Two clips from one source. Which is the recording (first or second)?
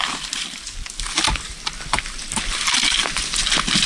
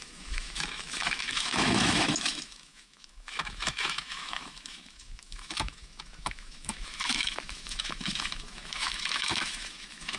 first